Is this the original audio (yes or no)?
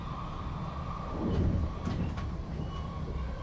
yes